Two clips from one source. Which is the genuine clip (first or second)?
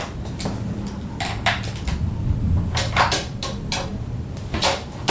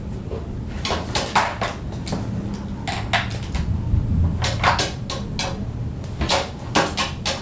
second